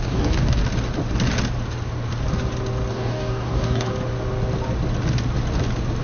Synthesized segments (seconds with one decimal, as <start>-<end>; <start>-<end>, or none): 0.0-0.6; 2.9-3.9